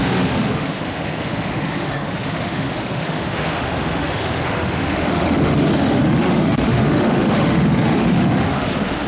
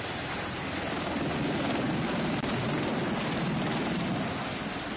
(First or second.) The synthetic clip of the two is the first